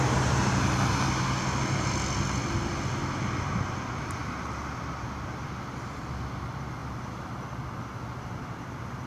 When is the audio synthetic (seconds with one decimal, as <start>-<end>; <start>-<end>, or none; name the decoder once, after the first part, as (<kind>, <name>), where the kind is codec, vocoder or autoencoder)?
none